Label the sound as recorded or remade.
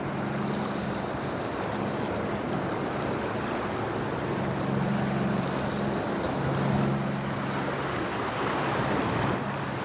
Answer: recorded